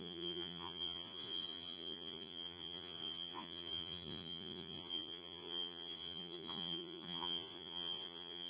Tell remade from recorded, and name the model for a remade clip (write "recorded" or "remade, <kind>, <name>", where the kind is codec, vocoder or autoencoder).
remade, vocoder, Vocos